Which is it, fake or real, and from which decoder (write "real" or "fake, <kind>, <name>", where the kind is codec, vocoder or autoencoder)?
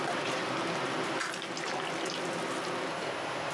real